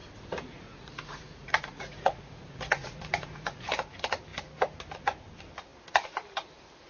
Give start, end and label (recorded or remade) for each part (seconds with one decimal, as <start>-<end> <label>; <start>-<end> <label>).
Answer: 0.0-3.7 remade; 3.7-6.9 recorded